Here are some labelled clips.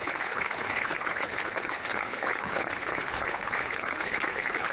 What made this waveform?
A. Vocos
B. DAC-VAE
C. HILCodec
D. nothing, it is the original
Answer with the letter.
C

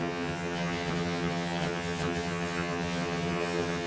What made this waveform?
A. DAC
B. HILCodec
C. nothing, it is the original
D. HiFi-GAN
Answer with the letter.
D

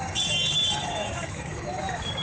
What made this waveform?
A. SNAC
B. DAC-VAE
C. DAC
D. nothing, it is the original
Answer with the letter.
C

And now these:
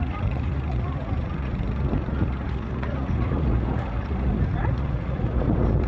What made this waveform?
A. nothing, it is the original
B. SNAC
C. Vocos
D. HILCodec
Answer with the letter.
C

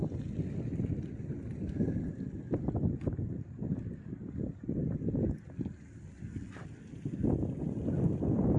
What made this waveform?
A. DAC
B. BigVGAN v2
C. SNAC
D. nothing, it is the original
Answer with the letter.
D